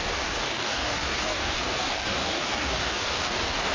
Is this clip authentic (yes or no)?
no